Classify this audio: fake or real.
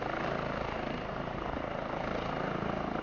real